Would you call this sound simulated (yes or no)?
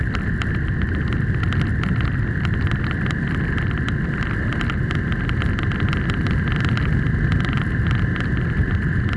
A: no